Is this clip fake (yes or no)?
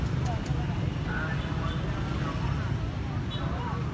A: no